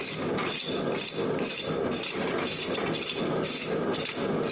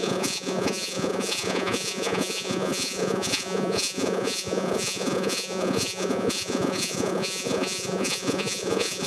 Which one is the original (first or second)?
first